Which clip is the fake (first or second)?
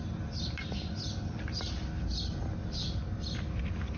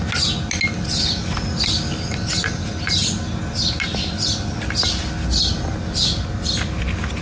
first